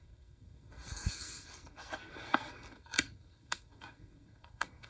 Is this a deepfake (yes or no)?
yes